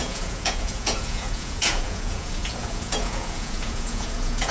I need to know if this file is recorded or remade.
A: remade